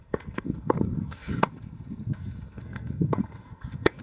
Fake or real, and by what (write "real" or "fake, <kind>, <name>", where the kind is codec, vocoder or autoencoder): fake, codec, SNAC